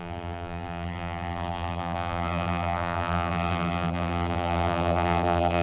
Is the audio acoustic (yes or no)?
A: no